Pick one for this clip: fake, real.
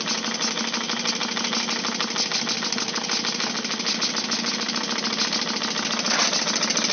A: real